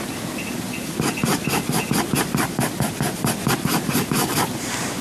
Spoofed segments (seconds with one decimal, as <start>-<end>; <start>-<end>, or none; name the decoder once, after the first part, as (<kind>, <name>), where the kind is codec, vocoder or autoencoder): none